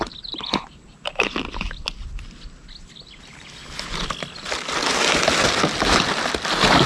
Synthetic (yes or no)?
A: no